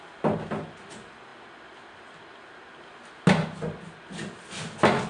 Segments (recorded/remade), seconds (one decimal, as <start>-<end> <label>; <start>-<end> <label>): 0.0-5.1 recorded